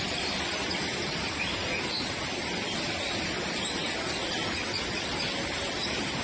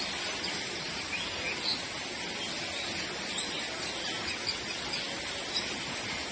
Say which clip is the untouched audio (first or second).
second